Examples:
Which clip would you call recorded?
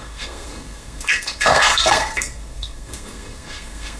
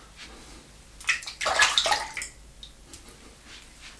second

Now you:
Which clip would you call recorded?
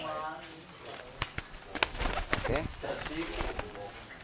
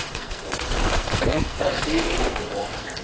first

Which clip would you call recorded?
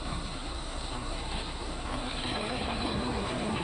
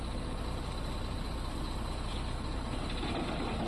second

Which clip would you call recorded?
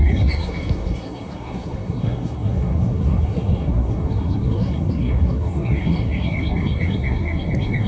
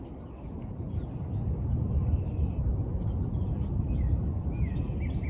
second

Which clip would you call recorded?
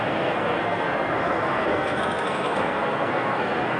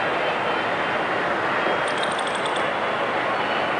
second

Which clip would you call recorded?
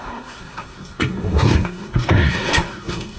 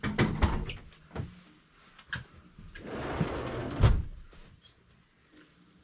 second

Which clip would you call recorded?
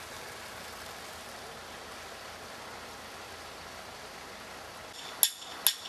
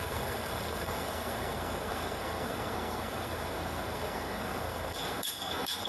first